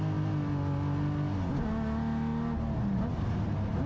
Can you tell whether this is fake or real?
real